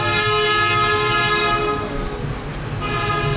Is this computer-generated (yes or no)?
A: no